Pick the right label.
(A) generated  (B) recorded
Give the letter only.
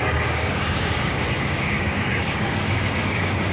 A